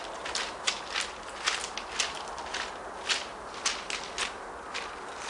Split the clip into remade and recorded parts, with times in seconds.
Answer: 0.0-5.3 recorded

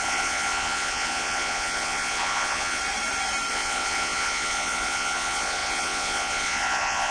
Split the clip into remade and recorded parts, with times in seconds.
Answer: 0.0-2.8 remade; 2.8-3.5 recorded; 3.5-7.1 remade

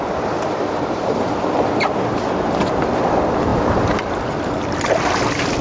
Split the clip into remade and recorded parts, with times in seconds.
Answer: 0.0-5.6 recorded

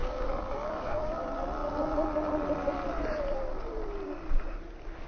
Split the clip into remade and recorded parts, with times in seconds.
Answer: 0.0-1.1 remade; 1.1-5.1 recorded

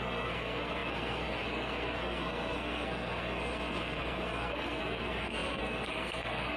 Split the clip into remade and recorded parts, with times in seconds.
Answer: 0.0-6.6 remade